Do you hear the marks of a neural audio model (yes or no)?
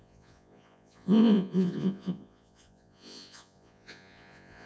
yes